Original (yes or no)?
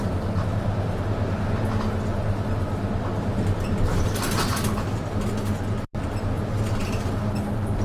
yes